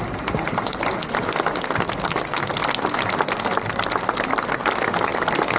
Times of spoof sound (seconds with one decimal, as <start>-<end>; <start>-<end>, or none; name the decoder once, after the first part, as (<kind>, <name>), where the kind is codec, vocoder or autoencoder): 5.1-5.6 (vocoder, BigVGAN v2)